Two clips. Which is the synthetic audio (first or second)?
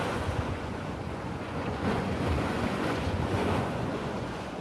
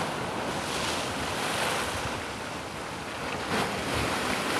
first